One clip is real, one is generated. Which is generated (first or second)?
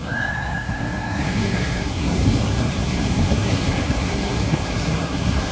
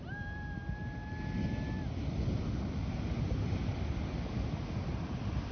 first